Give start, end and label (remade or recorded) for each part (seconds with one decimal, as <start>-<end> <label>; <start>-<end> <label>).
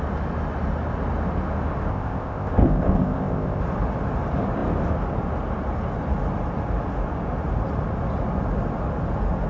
0.0-1.9 recorded; 1.9-3.6 remade; 3.6-9.5 recorded